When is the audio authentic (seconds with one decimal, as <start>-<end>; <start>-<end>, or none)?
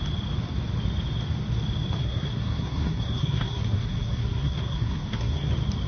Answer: 0.0-2.0; 5.5-5.9